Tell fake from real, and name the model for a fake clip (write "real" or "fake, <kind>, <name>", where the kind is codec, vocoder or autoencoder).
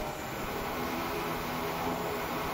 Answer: fake, vocoder, BigVGAN v2